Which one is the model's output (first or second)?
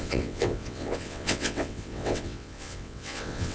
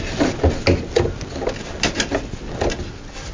first